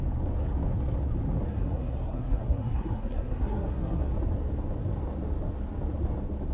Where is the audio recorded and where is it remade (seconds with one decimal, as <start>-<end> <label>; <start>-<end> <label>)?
0.0-1.5 recorded; 1.5-4.1 remade; 4.1-6.5 recorded